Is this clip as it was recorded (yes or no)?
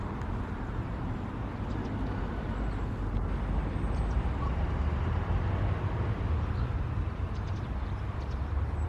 yes